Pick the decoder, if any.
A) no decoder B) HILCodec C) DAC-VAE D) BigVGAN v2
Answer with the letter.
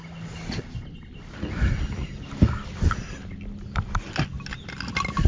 A